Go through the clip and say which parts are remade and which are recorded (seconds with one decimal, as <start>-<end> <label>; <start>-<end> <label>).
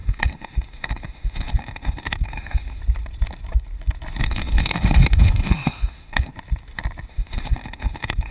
0.0-2.8 remade; 2.8-4.2 recorded; 4.2-6.3 remade; 6.3-7.1 recorded; 7.1-8.3 remade